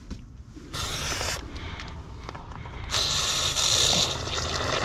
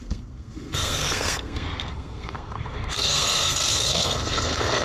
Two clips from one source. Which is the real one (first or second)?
first